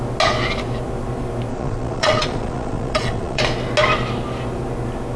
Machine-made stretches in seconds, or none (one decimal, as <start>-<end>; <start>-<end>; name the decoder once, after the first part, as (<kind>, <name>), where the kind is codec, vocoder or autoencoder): 1.5-3.4 (vocoder, Vocos)